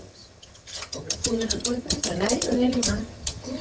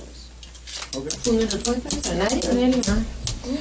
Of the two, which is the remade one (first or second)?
first